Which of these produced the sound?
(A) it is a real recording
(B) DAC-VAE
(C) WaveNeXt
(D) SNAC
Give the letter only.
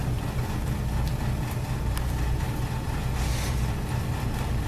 A